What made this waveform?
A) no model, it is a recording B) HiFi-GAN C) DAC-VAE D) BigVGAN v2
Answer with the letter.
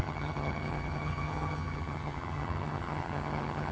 B